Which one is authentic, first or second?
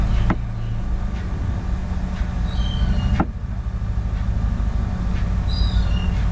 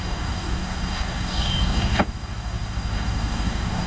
first